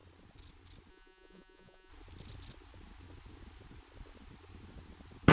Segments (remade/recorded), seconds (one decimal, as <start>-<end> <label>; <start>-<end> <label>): 0.0-0.9 recorded; 0.9-1.9 remade; 1.9-5.3 recorded